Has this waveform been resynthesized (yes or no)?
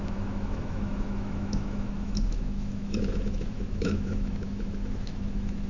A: yes